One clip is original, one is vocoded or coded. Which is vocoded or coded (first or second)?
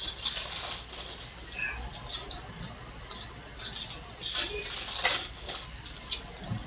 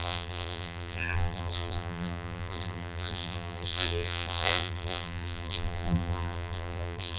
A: second